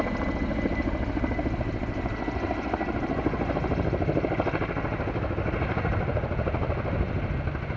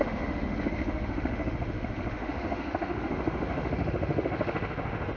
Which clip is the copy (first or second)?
second